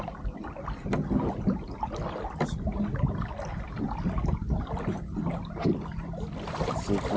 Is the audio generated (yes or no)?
no